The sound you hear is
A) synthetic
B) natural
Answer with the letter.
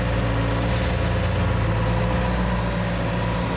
B